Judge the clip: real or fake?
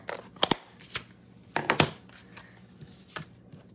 real